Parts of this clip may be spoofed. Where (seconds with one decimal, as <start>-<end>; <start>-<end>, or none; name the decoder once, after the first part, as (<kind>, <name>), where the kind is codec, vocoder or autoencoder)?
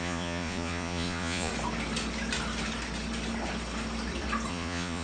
0.0-1.5 (vocoder, Vocos); 4.5-5.0